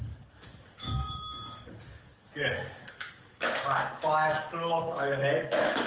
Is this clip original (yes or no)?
no